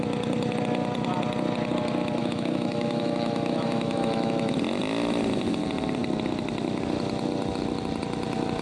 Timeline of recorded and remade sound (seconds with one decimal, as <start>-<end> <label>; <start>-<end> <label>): 0.0-2.2 recorded; 2.2-4.5 remade; 4.5-8.6 recorded